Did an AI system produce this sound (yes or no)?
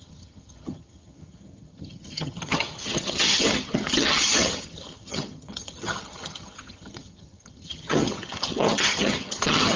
yes